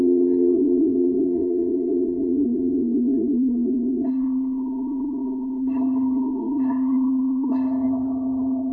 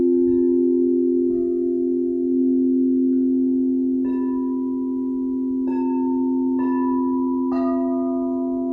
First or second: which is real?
second